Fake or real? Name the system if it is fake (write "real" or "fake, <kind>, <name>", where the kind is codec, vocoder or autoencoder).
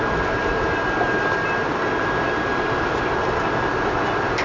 real